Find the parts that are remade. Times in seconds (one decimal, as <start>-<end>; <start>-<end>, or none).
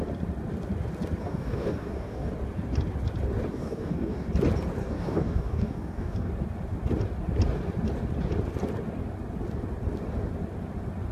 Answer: 1.2-2.3; 3.5-4.3; 4.8-6.3